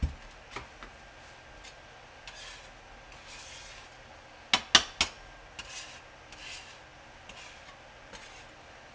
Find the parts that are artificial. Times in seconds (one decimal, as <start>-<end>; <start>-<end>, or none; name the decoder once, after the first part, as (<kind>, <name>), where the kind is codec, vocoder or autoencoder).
none